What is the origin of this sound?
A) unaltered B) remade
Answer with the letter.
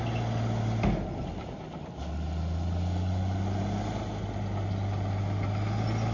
A